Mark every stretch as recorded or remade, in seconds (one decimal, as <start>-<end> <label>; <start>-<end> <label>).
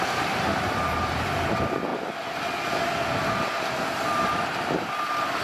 0.0-1.9 remade; 1.9-3.3 recorded; 3.3-5.4 remade